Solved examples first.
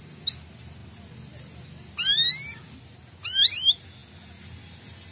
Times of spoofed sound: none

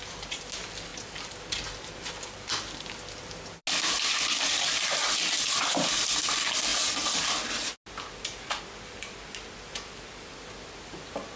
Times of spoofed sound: none